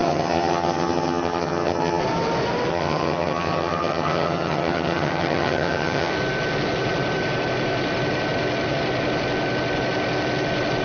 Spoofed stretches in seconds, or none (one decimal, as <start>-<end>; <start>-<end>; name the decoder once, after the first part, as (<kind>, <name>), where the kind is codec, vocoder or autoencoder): 0.0-2.0 (vocoder, HiFi-GAN); 2.7-6.1